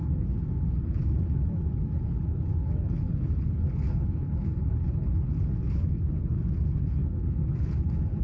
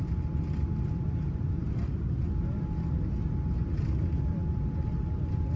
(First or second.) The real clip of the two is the second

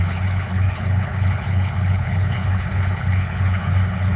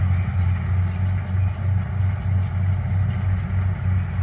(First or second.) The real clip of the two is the second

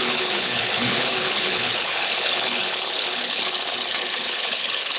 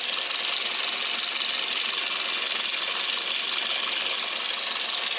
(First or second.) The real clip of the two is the second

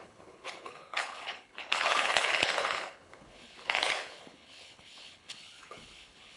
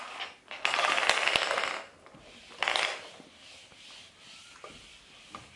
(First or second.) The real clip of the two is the second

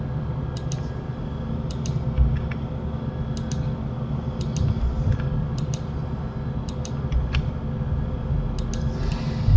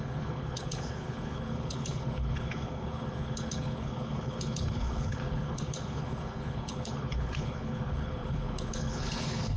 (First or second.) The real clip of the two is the first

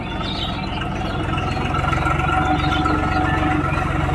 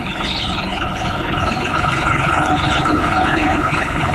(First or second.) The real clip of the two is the first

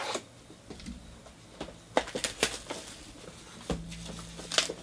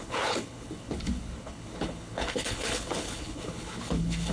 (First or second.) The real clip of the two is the first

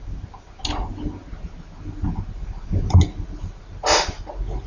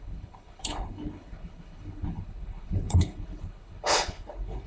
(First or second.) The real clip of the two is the first